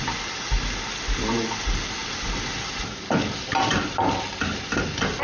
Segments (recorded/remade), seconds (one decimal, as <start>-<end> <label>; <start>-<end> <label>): 0.0-5.2 recorded